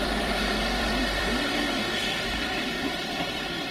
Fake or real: fake